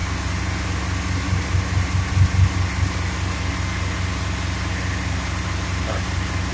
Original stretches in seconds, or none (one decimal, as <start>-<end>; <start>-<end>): 0.0-6.5